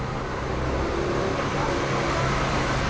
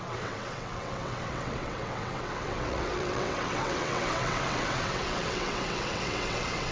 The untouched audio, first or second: first